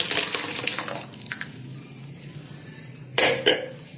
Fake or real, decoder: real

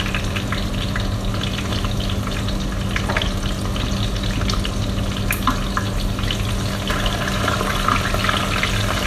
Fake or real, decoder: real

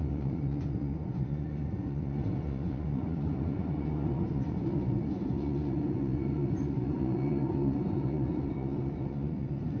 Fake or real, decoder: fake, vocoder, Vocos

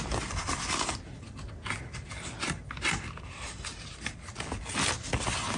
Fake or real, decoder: real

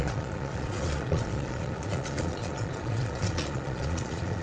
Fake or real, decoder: fake, vocoder, Vocos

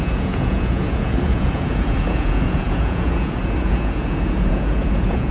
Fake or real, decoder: fake, vocoder, Vocos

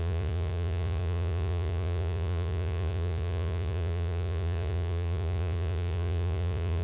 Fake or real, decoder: fake, vocoder, Vocos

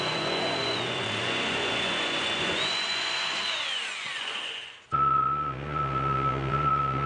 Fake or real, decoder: fake, vocoder, Vocos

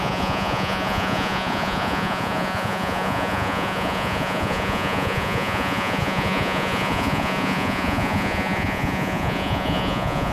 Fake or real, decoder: fake, vocoder, Vocos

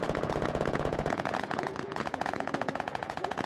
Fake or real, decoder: fake, vocoder, Vocos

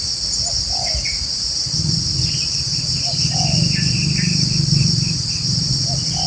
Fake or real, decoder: real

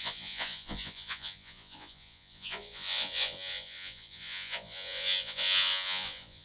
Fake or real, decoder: fake, vocoder, Vocos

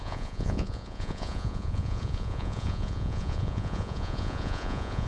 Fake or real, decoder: fake, vocoder, Vocos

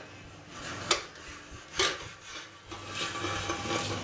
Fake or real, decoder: real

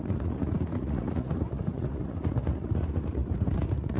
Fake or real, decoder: fake, vocoder, Vocos